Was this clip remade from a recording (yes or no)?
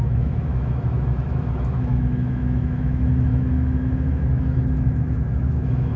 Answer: yes